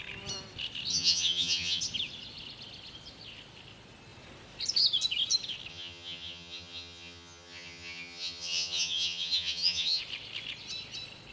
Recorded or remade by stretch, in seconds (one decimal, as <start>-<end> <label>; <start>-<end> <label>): 0.0-0.9 recorded; 0.9-1.8 remade; 1.8-5.7 recorded; 5.7-10.0 remade; 10.0-11.3 recorded